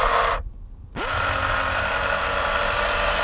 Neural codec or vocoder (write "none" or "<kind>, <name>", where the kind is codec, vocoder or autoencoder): none